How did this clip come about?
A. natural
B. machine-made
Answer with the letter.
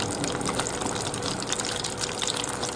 A